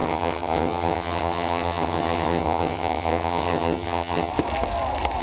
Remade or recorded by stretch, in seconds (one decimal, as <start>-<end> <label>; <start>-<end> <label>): 0.0-4.3 remade; 4.3-5.2 recorded